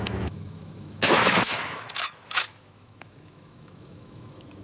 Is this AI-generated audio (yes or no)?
yes